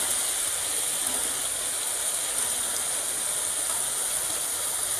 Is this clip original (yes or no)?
yes